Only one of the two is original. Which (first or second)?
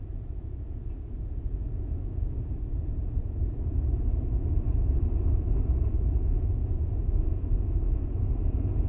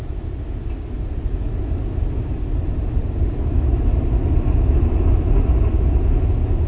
second